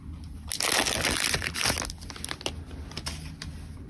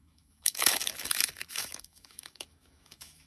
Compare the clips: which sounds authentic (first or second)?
first